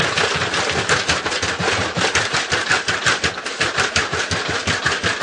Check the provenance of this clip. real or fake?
real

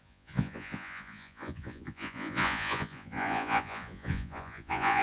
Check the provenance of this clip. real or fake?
fake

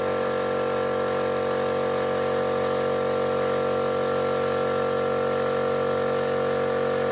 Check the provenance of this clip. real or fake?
real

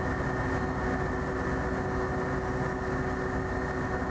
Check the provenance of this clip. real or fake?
real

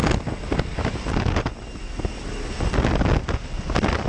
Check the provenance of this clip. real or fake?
real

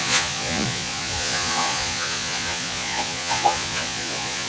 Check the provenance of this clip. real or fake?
fake